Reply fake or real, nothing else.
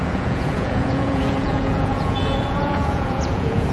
fake